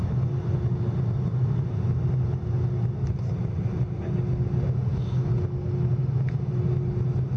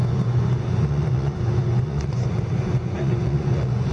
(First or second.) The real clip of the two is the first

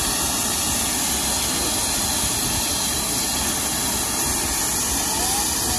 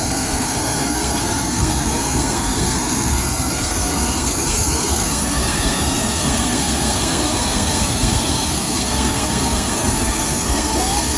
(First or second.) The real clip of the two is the first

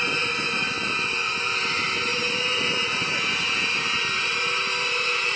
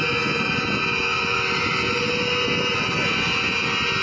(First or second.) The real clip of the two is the second